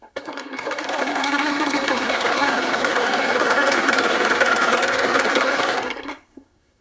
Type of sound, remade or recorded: remade